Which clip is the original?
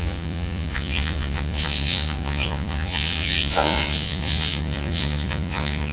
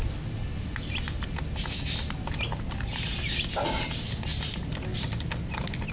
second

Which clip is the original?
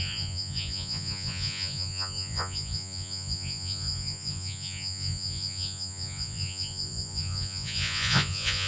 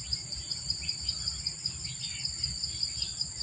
second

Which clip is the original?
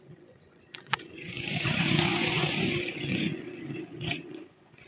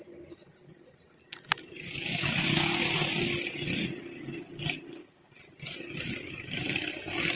second